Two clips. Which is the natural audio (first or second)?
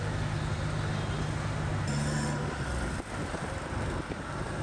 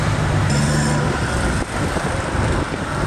first